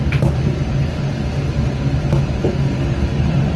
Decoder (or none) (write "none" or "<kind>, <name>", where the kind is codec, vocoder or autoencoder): none